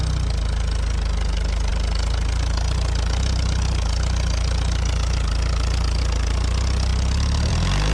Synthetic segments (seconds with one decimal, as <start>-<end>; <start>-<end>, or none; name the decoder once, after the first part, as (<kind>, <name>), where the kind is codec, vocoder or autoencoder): none